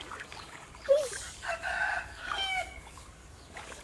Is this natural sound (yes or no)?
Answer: no